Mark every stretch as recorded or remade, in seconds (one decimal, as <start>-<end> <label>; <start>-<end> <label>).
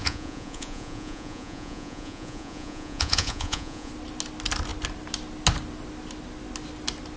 0.0-3.9 remade; 3.9-7.2 recorded